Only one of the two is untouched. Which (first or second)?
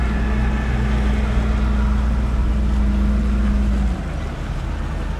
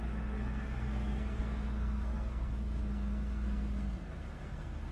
first